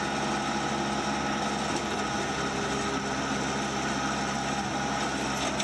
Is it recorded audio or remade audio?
recorded